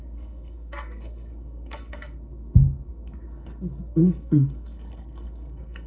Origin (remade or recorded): remade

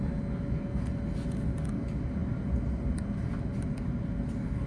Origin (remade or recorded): recorded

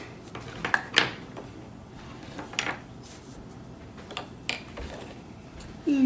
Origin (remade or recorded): recorded